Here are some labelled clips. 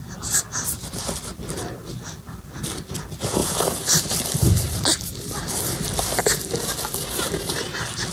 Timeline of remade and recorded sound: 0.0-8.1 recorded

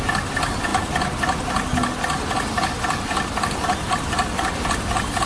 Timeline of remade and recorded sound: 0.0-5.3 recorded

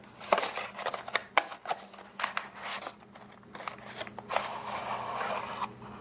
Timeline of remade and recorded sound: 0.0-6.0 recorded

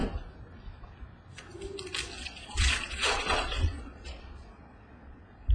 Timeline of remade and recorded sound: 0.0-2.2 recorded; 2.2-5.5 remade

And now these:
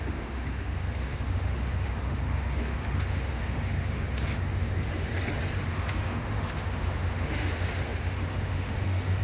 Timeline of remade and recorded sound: 0.0-5.1 remade; 5.1-5.7 recorded; 5.7-9.2 remade

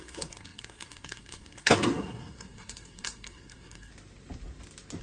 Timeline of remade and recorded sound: 0.0-3.9 remade; 3.9-5.0 recorded